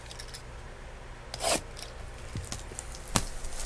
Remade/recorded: recorded